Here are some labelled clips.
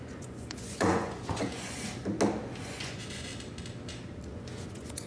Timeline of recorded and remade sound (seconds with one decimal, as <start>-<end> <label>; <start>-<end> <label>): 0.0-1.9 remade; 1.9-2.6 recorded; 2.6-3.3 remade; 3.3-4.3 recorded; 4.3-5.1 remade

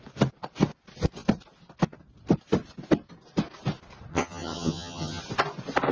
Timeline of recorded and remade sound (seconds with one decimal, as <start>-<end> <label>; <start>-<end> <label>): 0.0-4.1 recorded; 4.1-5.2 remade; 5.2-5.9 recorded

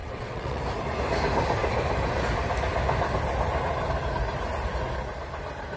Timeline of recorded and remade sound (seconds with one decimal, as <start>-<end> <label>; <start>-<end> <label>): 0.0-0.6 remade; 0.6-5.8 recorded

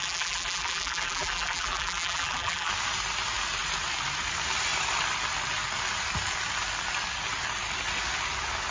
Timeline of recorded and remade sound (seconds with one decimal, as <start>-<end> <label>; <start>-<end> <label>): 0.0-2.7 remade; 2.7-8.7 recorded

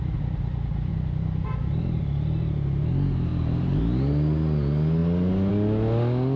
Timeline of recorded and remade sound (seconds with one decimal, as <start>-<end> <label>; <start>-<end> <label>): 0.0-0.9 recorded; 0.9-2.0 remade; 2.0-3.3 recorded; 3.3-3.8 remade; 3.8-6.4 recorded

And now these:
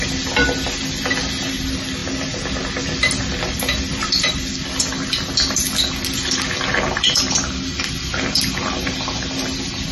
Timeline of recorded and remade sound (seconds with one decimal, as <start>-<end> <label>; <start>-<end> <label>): 0.0-9.9 recorded

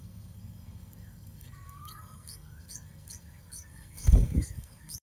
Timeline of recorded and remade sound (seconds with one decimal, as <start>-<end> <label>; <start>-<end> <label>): 0.0-5.0 remade

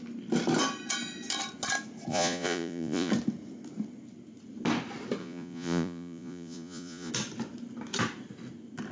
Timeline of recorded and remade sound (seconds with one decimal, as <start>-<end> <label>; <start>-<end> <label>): 0.0-2.1 recorded; 2.1-3.1 remade; 3.1-5.2 recorded; 5.2-7.1 remade; 7.1-8.9 recorded